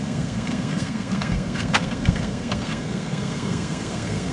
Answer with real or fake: fake